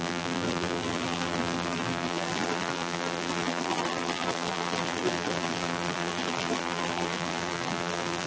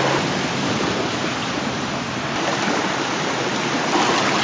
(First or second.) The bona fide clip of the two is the second